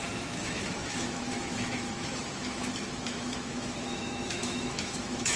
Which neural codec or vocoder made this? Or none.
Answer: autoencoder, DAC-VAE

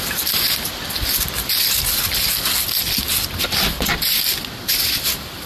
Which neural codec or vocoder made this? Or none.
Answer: none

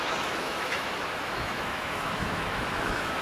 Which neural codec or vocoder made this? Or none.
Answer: autoencoder, DAC-VAE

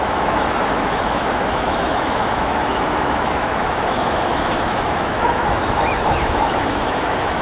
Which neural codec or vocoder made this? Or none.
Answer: autoencoder, DAC-VAE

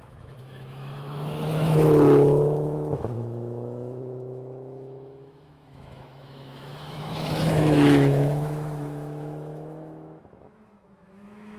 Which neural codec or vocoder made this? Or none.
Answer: autoencoder, DAC-VAE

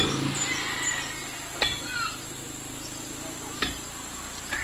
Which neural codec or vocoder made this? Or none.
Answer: none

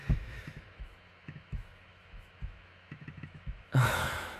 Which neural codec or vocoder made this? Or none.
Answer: autoencoder, DAC-VAE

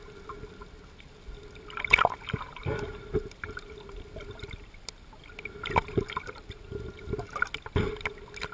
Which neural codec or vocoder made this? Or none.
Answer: none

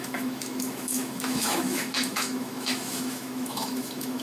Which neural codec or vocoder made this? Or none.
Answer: autoencoder, DAC-VAE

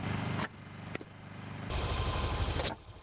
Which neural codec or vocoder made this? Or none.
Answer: none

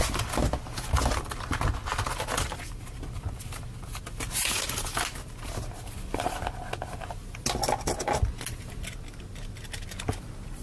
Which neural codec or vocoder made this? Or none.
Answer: none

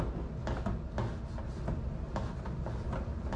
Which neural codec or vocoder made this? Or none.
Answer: none